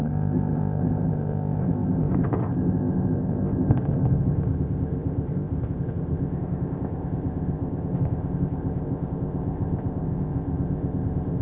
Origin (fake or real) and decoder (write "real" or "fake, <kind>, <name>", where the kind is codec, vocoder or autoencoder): fake, codec, ZipCodec